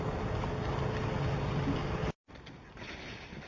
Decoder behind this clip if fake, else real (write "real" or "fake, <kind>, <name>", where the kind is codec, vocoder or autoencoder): real